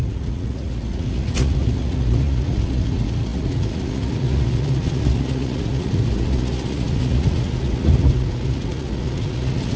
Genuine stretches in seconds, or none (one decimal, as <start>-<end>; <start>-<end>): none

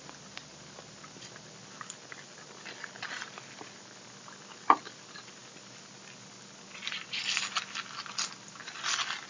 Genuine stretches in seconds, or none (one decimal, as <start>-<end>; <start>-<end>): 0.0-9.3

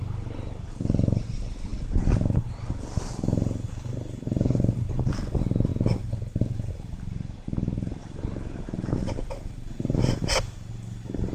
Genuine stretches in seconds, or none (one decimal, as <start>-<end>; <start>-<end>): 0.0-11.3

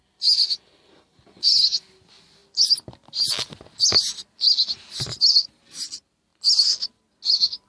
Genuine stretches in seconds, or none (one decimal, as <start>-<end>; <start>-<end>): 0.0-7.7

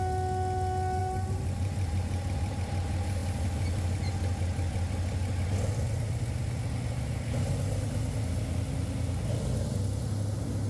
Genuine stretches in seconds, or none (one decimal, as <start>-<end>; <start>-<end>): 0.0-1.0; 2.6-10.7

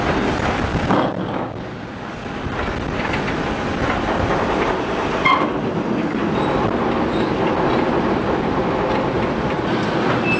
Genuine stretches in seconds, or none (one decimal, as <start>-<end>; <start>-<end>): 0.0-0.7; 1.6-10.4

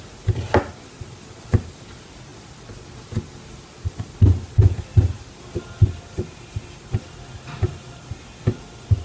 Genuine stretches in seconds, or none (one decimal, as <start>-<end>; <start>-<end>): 0.0-9.0